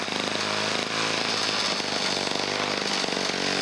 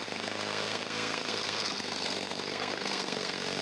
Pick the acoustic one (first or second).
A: first